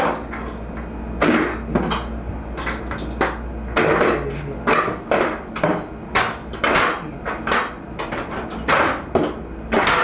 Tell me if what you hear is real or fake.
real